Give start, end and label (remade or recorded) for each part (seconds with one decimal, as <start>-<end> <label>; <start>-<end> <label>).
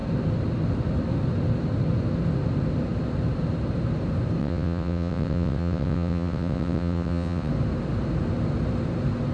0.0-4.4 recorded; 4.4-7.5 remade; 7.5-9.3 recorded